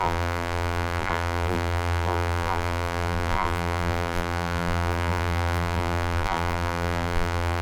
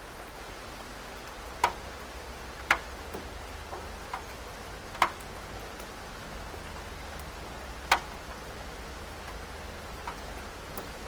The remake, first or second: first